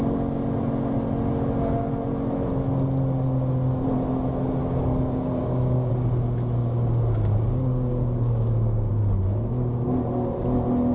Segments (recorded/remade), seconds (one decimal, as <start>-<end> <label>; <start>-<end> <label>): 0.0-4.6 recorded; 4.6-5.9 remade; 5.9-6.6 recorded; 6.6-8.9 remade; 8.9-10.9 recorded